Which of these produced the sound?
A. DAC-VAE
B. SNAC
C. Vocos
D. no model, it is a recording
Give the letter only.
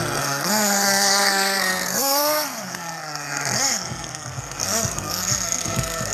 B